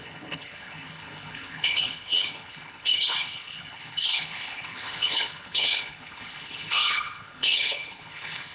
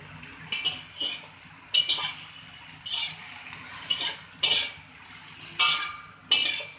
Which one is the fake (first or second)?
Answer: first